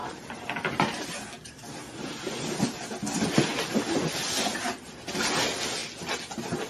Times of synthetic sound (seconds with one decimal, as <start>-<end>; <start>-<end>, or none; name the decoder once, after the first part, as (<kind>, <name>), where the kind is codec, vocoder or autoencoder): 0.0-1.0 (vocoder, BigVGAN v2)